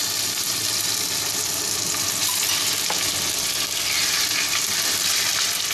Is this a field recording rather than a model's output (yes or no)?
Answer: yes